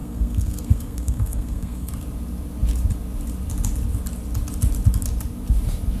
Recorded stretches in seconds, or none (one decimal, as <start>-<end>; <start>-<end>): 1.9-6.0